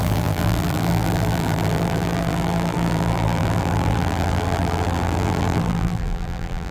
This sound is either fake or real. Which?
fake